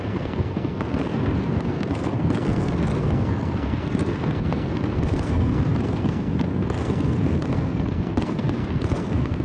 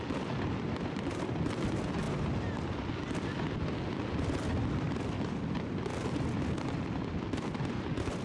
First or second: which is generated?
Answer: first